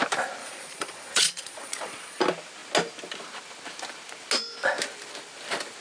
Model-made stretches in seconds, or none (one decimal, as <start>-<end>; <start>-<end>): 0.4-2.2